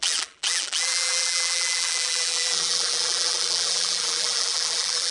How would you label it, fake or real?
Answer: fake